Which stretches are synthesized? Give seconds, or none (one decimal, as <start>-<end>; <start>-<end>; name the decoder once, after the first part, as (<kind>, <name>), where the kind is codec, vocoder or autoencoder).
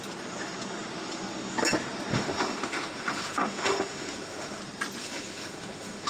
2.1-4.6 (autoencoder, DAC-VAE); 5.0-6.1